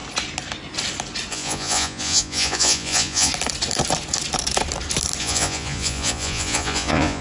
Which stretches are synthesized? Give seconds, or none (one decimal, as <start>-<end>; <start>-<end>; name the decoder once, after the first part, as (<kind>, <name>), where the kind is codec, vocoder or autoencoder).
1.3-3.3 (vocoder, Vocos); 5.2-7.2